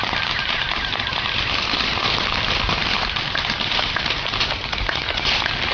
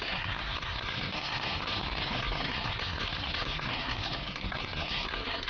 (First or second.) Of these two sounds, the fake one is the second